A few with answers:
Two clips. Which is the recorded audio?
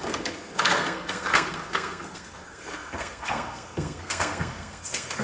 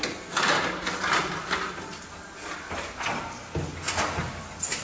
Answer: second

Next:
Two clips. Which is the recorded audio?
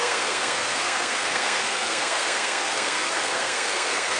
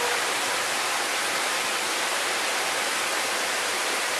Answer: second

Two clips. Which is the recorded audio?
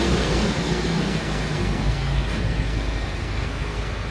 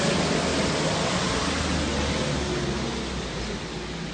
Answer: second